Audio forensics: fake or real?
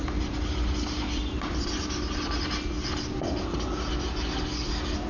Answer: real